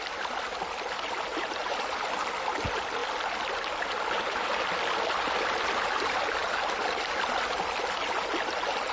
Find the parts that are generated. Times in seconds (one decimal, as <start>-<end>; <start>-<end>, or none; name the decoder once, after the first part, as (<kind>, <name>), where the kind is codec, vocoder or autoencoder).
1.3-2.1 (vocoder, BigVGAN v2)